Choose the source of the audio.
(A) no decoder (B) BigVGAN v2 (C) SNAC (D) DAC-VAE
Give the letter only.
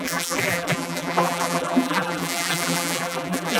B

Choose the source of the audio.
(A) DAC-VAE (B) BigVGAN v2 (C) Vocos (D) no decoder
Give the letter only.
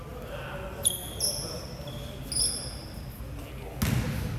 D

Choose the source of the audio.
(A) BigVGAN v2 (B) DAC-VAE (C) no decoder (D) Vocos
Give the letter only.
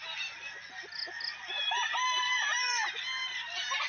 C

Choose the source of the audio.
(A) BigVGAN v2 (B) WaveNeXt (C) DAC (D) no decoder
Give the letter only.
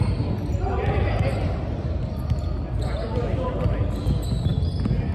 D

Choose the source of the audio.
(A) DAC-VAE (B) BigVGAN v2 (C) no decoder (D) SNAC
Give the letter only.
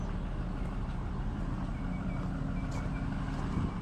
C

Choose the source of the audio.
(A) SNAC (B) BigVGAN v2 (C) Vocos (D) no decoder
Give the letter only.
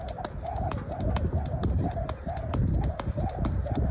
D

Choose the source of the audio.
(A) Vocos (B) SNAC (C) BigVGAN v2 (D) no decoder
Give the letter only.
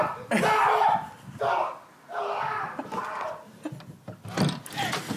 D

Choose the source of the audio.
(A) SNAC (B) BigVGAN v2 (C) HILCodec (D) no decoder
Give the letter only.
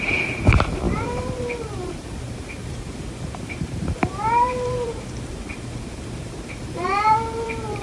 B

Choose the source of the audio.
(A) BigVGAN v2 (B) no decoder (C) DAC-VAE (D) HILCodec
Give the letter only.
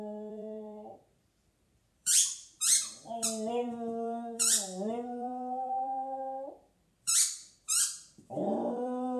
A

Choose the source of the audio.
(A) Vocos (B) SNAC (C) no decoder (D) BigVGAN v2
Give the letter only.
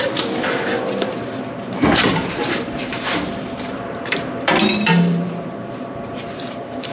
D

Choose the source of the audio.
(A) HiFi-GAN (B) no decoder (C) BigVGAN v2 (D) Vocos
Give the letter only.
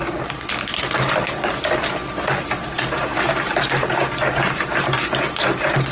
C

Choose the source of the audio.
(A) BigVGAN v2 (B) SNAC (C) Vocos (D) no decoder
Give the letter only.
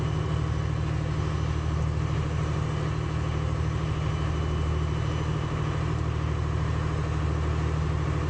D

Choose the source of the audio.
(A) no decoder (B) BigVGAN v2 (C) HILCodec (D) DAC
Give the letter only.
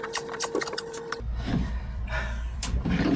B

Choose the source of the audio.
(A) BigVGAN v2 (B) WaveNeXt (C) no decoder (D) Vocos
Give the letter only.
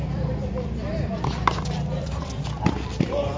A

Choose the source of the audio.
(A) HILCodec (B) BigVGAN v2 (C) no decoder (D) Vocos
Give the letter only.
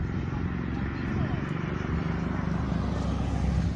C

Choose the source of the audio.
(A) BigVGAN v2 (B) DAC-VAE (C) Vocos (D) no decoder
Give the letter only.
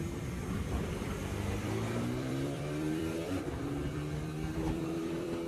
A